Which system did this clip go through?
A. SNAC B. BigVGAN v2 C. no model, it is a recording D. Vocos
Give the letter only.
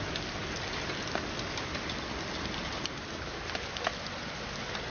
C